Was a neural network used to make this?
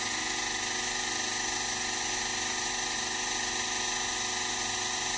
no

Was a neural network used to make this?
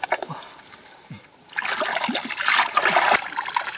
no